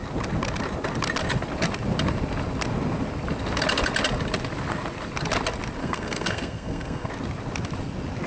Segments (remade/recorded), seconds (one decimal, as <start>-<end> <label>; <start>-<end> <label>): 0.0-5.8 recorded; 5.8-7.1 remade; 7.1-8.3 recorded

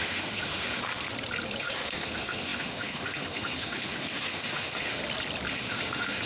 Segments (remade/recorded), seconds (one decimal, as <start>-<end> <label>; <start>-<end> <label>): 0.0-0.8 remade; 0.8-1.6 recorded; 1.6-5.0 remade; 5.0-5.5 recorded; 5.5-6.3 remade